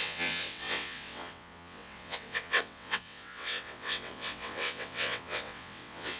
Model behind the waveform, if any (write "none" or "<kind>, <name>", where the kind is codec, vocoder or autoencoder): vocoder, WaveNeXt